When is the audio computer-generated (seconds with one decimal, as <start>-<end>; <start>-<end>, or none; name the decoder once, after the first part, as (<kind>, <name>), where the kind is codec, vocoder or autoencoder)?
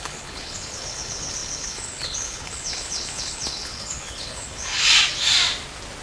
0.0-4.7 (codec, HILCodec)